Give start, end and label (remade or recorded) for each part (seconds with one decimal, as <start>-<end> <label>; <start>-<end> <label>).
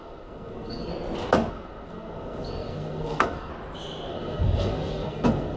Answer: 0.0-0.9 remade; 0.9-1.5 recorded; 1.5-3.5 remade; 3.5-4.1 recorded; 4.1-5.6 remade